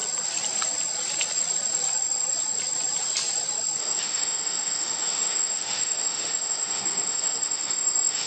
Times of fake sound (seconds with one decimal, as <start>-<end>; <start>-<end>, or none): 3.8-8.3